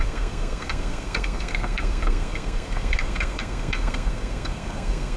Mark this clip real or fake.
fake